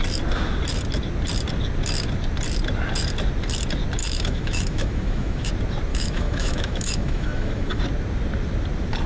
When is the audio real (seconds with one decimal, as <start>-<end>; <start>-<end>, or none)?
0.0-4.0; 5.5-5.9; 7.8-9.1